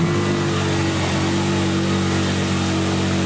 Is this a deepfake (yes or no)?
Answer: no